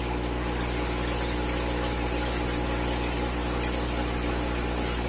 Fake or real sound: real